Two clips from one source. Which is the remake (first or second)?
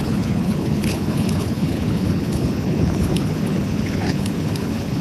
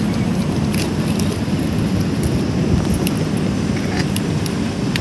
first